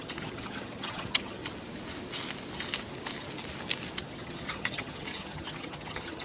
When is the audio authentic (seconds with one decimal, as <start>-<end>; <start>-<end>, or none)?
1.4-4.0